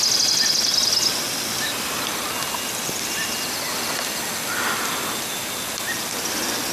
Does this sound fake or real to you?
real